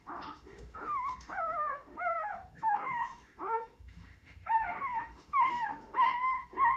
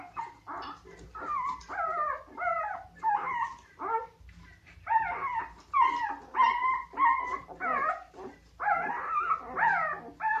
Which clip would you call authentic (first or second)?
second